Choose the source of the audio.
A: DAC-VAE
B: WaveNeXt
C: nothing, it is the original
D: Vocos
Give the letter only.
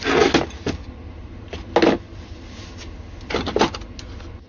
C